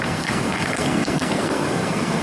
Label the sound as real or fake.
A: fake